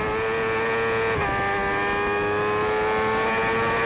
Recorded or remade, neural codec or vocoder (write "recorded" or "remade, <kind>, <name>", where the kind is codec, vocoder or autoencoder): recorded